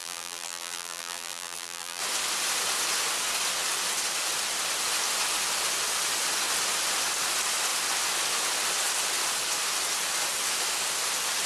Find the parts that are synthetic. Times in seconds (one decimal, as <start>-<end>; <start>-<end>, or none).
0.0-2.0